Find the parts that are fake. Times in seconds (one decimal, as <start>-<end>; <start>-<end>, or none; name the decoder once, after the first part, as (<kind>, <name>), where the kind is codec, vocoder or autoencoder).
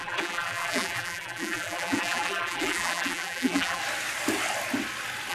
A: 0.0-3.8 (vocoder, BigVGAN v2)